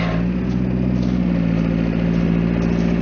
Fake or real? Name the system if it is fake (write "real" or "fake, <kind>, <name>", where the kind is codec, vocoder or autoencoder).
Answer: real